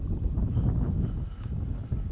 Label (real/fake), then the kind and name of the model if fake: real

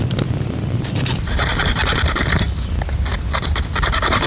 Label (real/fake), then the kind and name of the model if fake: real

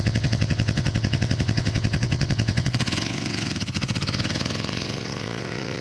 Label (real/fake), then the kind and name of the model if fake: fake, vocoder, WaveNeXt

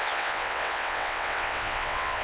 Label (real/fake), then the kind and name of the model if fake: fake, vocoder, WaveNeXt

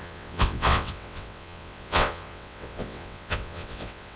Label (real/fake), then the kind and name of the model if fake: fake, vocoder, WaveNeXt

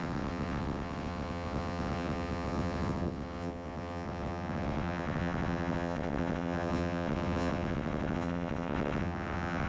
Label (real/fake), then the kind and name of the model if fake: fake, vocoder, WaveNeXt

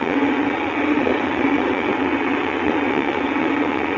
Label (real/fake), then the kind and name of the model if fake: fake, vocoder, WaveNeXt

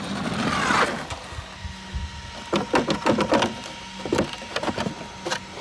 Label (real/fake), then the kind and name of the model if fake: real